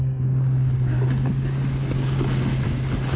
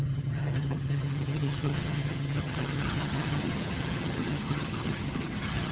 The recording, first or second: first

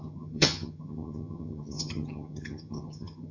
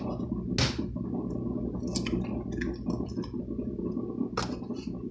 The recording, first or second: second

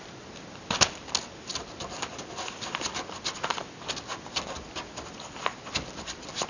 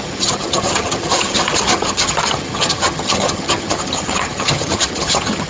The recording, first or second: first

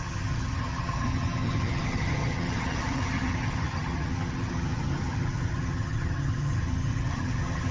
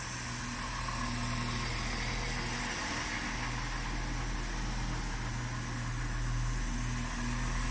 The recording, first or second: second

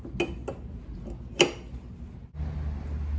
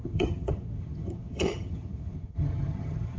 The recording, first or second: first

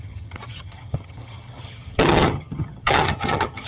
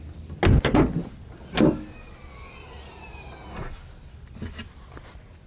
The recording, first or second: second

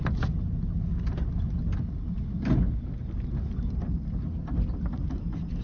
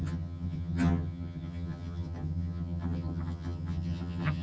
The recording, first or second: first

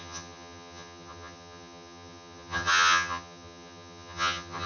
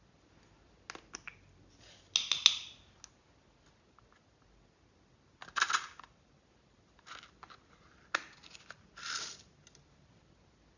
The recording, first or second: second